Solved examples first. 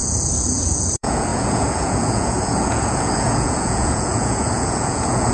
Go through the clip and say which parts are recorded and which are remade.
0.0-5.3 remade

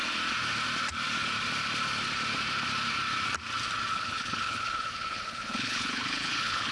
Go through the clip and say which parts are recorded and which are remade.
0.0-3.9 recorded; 3.9-6.7 remade

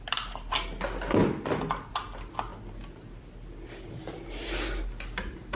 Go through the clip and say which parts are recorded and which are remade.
0.0-5.6 recorded

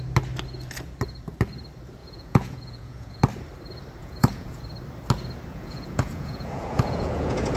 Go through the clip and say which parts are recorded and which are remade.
0.0-2.0 recorded; 2.0-3.2 remade; 3.2-4.0 recorded; 4.0-4.6 remade; 4.6-5.5 recorded; 5.5-7.6 remade

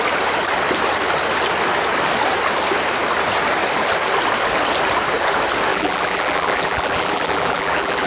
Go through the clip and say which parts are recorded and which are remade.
0.0-5.7 recorded; 5.7-8.1 remade

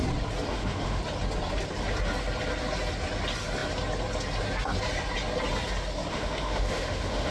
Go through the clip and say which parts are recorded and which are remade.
0.0-0.5 recorded; 0.5-1.0 remade; 1.0-6.1 recorded; 6.1-7.3 remade

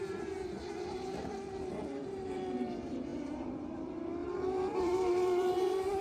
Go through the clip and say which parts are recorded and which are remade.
0.0-6.0 remade